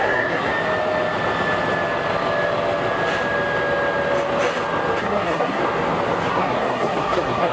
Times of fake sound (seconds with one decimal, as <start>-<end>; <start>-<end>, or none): 0.0-0.5; 5.0-5.6; 6.3-7.5